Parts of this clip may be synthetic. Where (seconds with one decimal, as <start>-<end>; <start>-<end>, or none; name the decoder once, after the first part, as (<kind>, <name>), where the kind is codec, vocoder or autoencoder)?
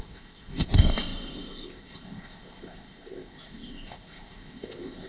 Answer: 0.0-5.1 (codec, ZipCodec)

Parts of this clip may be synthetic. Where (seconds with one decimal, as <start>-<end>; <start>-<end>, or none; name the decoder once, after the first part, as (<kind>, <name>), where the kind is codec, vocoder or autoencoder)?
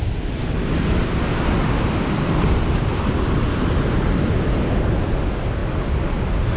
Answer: none